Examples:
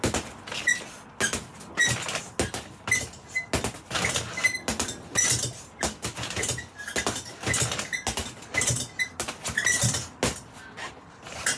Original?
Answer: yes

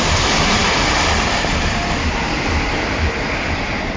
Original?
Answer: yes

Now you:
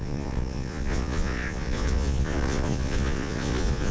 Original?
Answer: no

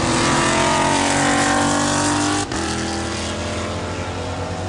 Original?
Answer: yes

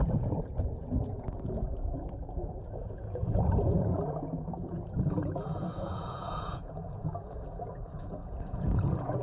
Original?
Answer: no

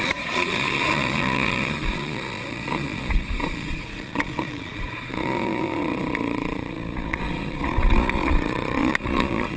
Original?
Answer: no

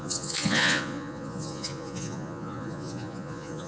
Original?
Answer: no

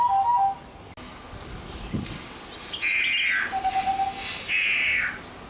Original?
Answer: yes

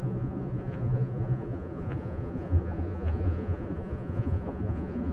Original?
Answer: no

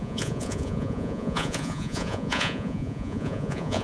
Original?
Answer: no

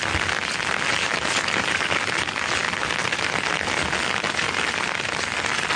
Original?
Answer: yes